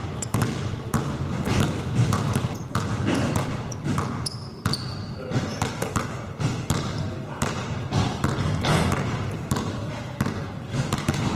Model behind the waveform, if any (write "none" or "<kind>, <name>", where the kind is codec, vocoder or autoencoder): none